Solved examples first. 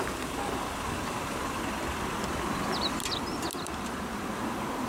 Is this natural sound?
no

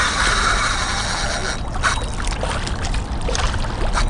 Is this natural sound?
yes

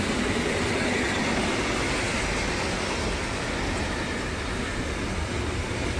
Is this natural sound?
yes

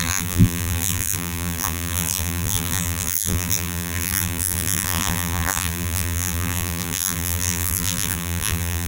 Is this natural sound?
no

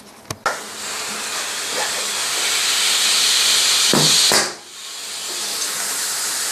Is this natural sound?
yes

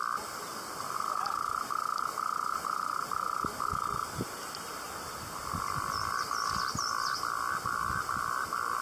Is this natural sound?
no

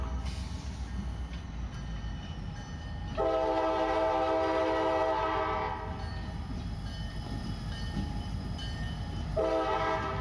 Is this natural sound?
yes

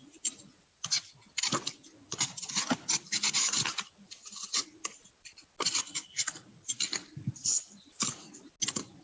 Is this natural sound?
yes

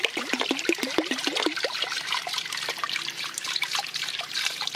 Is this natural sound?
no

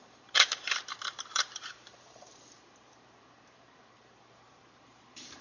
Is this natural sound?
no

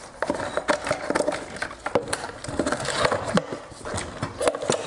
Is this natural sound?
yes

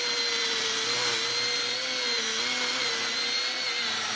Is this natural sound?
yes